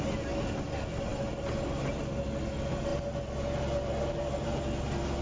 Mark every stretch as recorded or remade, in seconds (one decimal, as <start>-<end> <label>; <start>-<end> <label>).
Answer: 0.0-5.2 recorded